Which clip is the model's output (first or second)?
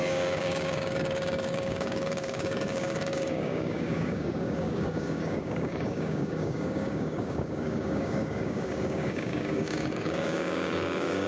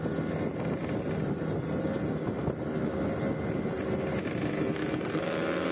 first